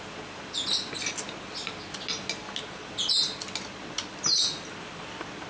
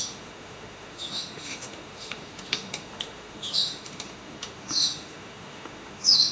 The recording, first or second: first